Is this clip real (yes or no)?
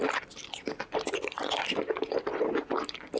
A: yes